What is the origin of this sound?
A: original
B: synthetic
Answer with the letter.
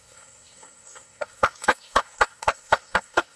B